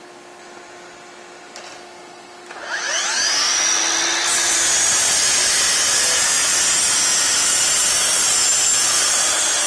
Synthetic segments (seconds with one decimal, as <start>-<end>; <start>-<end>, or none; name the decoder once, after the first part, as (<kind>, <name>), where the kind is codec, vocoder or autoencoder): none